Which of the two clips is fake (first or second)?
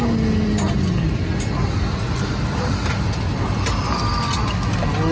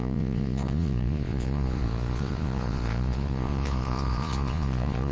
second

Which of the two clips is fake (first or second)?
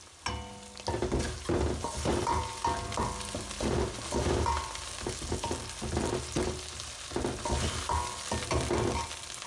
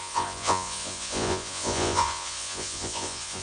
second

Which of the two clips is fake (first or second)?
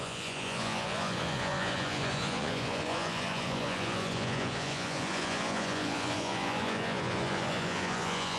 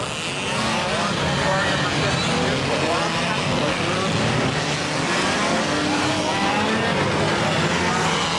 first